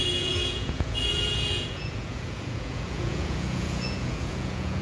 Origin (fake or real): fake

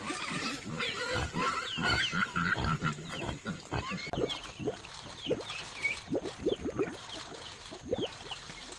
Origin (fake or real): real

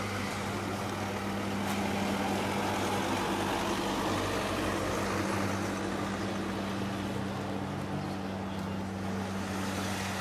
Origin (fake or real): real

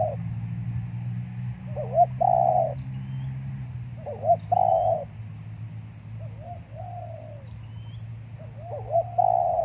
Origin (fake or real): real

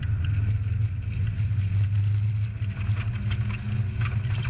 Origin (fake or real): real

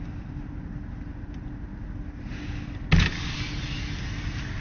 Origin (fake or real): real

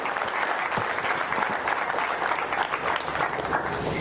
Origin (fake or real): real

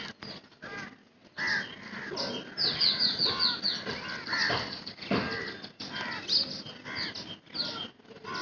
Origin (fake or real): real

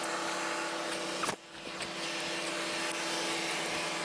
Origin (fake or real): real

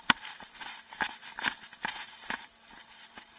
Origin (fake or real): real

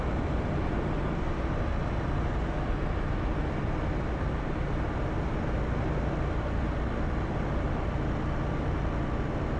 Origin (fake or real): real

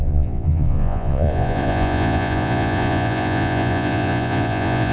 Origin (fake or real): fake